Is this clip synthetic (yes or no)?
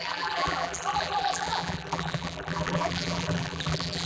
yes